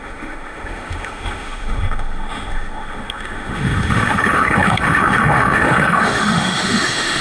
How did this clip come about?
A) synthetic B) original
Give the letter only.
A